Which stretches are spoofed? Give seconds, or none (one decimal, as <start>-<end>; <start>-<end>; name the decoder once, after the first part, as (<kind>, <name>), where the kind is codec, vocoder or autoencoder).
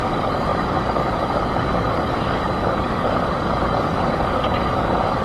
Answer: 0.0-5.2 (codec, DAC)